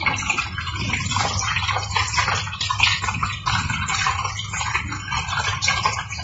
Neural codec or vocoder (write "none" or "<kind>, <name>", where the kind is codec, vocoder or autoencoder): vocoder, BigVGAN v2